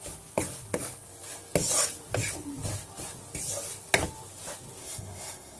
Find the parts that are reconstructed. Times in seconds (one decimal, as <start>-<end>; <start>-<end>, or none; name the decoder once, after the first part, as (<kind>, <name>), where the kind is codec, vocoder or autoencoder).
4.8-5.6 (codec, SNAC)